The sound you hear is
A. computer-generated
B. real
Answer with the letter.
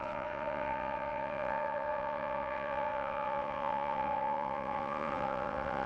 A